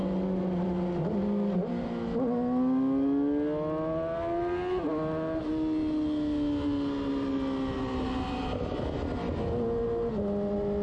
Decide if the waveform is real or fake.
real